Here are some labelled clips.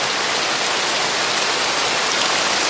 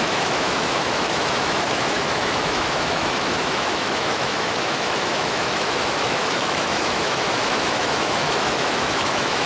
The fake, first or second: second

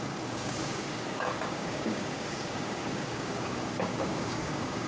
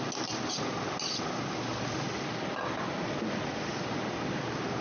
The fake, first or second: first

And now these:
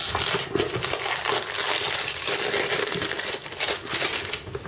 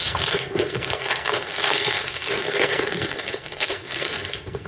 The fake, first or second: second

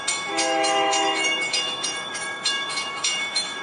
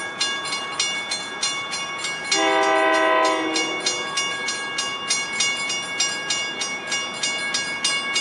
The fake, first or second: first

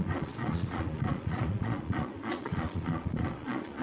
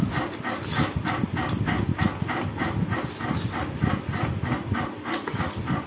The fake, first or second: first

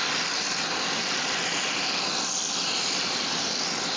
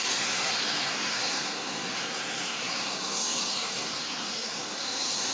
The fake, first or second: second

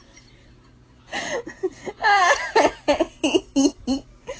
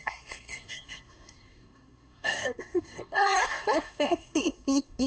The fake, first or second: second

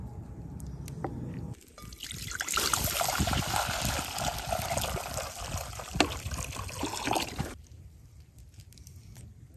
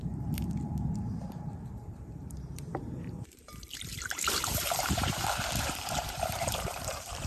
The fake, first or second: second